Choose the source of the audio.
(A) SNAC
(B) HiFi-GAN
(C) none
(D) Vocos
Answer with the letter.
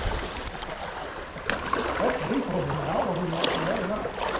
C